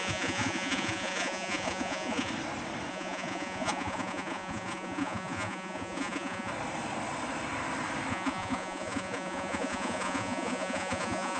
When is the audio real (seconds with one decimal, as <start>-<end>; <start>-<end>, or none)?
2.3-2.9; 6.5-8.1

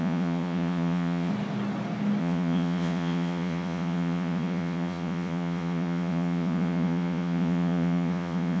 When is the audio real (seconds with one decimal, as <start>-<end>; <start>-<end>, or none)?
1.3-2.2

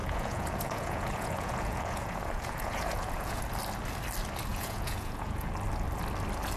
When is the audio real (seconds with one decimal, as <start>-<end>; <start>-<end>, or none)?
3.4-4.5; 5.5-6.6

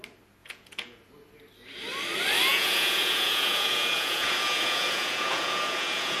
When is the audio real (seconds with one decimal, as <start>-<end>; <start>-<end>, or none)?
0.0-0.4; 1.1-2.5